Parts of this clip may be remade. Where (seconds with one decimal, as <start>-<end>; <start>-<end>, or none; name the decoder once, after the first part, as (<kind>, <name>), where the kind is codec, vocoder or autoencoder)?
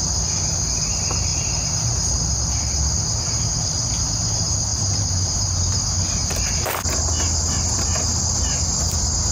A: 4.7-6.6 (vocoder, BigVGAN v2)